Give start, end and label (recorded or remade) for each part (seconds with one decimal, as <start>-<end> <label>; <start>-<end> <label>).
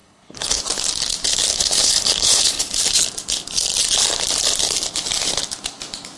0.0-0.6 remade; 0.6-1.5 recorded; 1.5-2.7 remade; 2.7-6.2 recorded